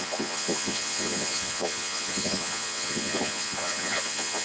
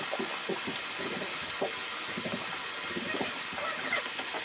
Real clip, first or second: second